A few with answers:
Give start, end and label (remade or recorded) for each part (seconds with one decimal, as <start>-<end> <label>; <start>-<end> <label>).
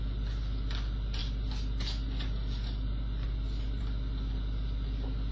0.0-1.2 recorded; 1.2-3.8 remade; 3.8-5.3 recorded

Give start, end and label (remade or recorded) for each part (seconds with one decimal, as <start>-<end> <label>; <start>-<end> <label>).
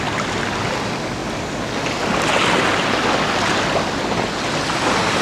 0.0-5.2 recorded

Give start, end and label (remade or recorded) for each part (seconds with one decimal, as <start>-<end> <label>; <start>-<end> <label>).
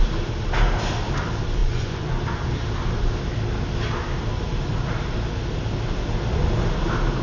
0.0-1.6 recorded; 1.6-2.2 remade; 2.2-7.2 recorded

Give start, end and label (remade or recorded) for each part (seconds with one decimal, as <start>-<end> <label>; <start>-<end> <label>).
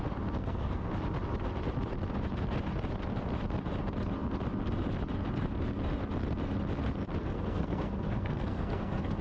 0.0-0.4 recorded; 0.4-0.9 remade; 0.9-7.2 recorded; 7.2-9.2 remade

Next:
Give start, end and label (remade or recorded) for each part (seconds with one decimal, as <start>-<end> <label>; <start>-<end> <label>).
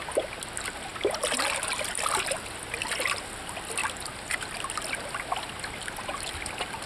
0.0-6.9 recorded